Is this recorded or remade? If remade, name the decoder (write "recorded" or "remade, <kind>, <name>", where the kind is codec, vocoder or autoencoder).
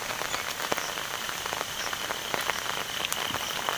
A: recorded